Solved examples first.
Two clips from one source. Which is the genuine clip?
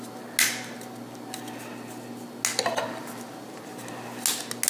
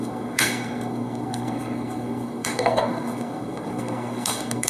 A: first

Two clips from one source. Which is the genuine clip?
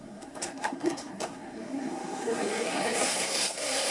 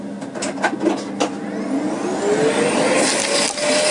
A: second